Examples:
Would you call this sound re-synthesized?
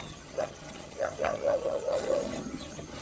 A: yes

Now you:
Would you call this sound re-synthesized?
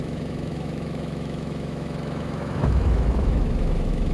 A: yes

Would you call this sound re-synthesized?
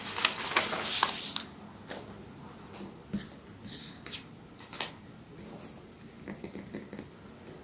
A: no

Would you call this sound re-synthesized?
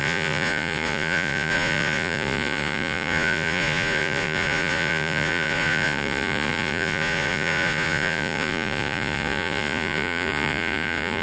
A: yes